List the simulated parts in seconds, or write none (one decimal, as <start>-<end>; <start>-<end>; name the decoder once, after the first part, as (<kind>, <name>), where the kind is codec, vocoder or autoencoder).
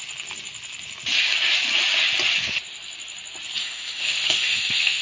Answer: 3.6-5.0 (autoencoder, DAC-VAE)